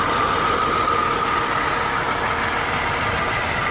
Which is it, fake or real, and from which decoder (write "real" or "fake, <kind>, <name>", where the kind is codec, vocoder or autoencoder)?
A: real